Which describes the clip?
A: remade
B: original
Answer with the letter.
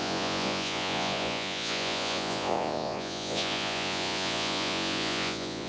A